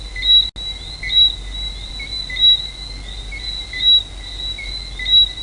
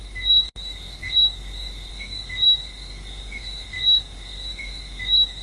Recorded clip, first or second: first